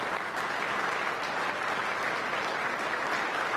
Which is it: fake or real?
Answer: real